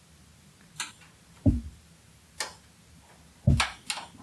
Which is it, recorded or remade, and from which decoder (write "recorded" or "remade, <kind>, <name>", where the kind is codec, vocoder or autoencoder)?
recorded